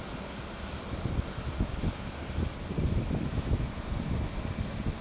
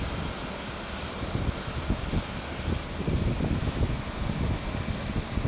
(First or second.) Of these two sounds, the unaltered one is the second